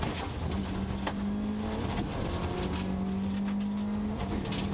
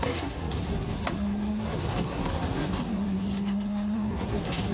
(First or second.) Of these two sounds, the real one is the first